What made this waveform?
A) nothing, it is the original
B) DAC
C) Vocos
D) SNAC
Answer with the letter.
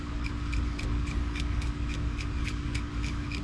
B